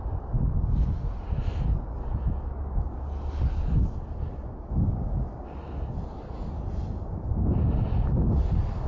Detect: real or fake real